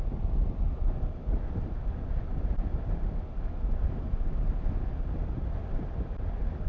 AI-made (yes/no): no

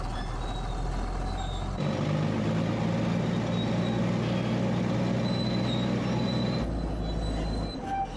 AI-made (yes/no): no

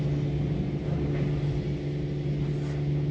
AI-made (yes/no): no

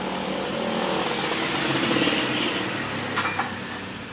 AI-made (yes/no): no